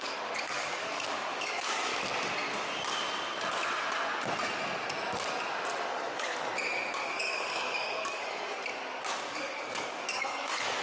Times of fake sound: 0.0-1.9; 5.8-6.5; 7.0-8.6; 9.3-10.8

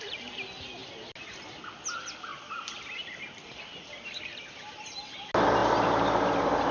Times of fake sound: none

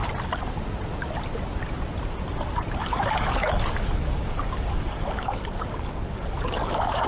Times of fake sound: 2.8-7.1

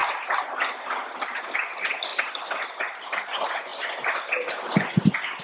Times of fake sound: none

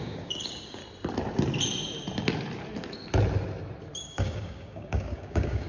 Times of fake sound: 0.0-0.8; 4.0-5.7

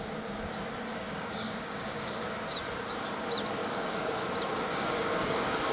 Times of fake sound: 0.9-2.4; 3.6-4.3; 4.7-5.7